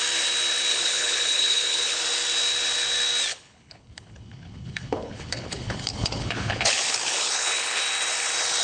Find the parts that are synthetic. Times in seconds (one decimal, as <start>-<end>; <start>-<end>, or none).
0.7-2.0; 3.3-7.8